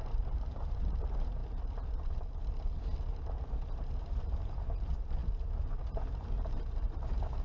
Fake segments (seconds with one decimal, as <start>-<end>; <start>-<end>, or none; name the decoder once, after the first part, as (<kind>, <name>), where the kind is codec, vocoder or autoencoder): 0.0-1.4 (vocoder, BigVGAN v2); 4.1-7.4